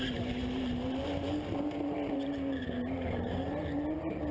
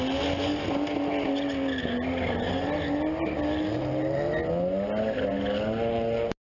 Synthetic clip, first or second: first